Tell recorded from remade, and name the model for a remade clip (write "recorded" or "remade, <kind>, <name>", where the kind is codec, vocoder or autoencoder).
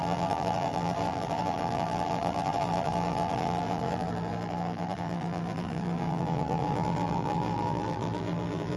remade, vocoder, BigVGAN v2